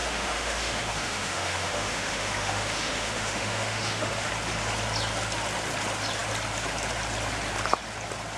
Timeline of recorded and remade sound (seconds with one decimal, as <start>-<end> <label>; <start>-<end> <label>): 0.0-4.3 remade; 4.3-8.4 recorded